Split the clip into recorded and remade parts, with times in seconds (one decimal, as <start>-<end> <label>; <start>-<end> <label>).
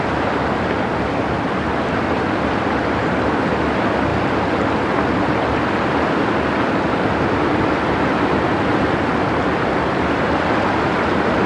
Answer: 0.0-11.5 recorded